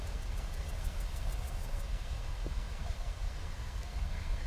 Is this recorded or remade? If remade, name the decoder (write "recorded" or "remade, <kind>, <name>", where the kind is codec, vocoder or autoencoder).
remade, codec, SNAC